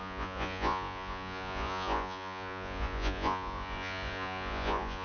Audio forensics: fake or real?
fake